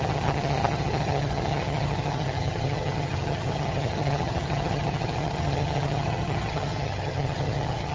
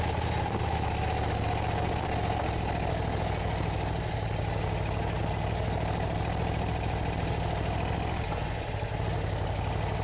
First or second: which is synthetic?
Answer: first